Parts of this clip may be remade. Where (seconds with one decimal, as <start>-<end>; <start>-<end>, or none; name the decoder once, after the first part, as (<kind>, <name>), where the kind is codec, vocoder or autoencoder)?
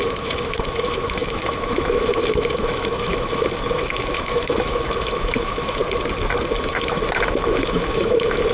0.0-5.8 (autoencoder, DAC-VAE); 6.6-8.5